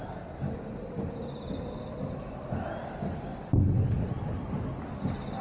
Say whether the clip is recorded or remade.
recorded